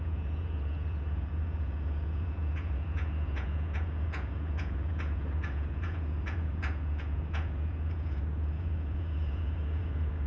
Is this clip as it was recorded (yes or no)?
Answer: no